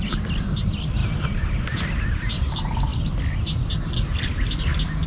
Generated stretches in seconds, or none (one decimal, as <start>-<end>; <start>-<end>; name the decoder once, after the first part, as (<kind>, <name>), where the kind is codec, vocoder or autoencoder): none